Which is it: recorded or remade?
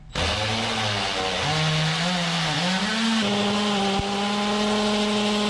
recorded